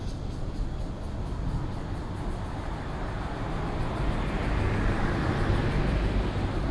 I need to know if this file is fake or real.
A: real